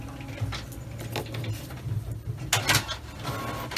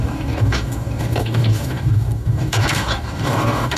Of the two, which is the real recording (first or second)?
first